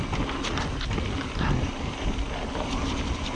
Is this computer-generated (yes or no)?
no